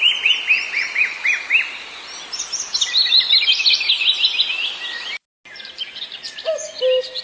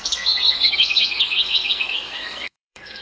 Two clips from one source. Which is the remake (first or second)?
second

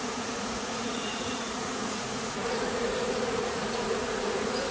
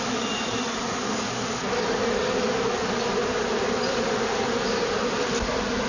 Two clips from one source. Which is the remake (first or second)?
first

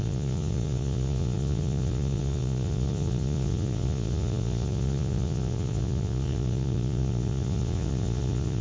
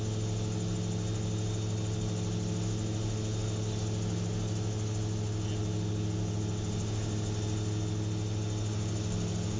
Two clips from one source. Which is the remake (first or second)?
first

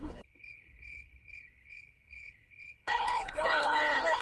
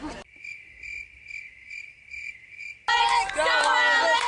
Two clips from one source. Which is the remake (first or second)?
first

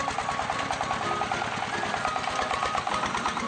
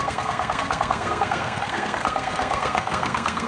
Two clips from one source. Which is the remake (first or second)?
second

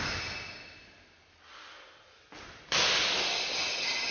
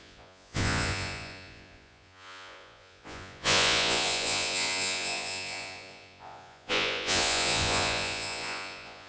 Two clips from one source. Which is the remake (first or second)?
second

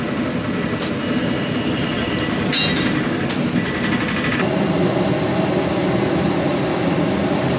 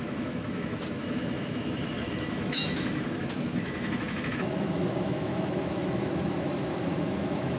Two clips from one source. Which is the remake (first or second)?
second